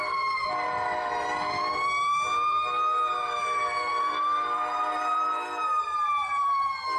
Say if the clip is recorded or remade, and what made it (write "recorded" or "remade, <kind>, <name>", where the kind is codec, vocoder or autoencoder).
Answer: remade, vocoder, BigVGAN v2